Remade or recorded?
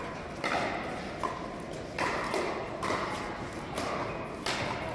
recorded